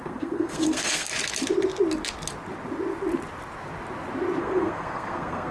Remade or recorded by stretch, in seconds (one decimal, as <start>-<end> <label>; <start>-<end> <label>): 0.0-1.1 remade; 1.1-4.4 recorded; 4.4-5.5 remade